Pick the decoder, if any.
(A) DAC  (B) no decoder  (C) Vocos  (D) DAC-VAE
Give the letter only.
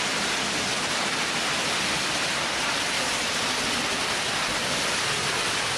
B